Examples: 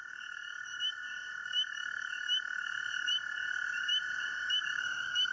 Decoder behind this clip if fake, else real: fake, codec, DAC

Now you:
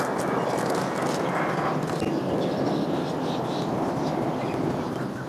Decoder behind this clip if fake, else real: real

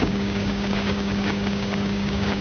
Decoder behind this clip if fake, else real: fake, codec, DAC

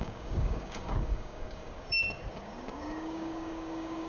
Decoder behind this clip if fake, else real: fake, codec, DAC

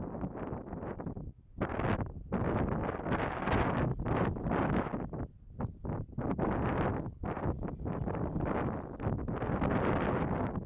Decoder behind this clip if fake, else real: real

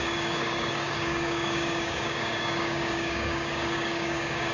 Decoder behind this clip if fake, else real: fake, codec, DAC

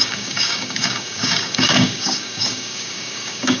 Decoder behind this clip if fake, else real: fake, codec, DAC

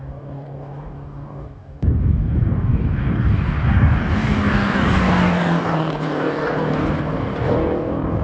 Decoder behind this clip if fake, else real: fake, codec, DAC